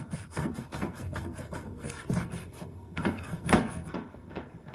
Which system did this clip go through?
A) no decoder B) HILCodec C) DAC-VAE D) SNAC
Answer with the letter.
D